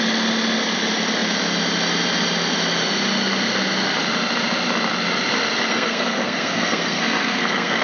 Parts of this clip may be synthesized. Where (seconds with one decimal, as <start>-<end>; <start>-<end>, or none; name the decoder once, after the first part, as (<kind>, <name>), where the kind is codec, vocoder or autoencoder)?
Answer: 5.7-7.8 (codec, SNAC)